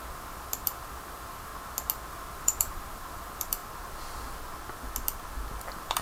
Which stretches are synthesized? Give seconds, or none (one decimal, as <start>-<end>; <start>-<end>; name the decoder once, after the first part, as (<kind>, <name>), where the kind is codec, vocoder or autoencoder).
0.0-1.5 (vocoder, BigVGAN v2); 2.1-3.6; 5.6-6.0